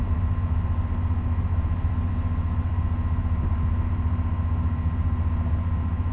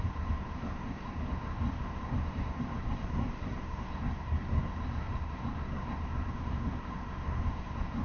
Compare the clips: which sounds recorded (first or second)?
first